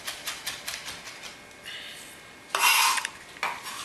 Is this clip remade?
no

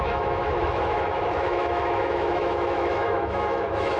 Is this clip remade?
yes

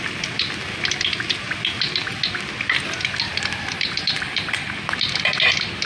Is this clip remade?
no